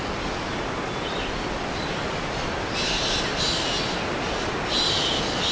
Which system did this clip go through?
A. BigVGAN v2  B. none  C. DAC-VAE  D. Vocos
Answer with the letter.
B